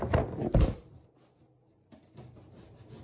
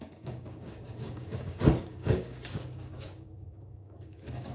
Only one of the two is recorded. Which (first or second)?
first